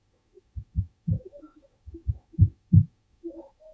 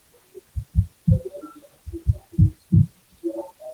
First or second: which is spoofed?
first